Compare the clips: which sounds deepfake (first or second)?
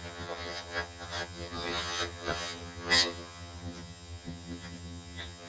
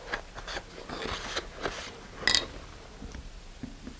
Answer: first